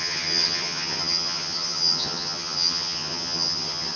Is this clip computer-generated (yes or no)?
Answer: yes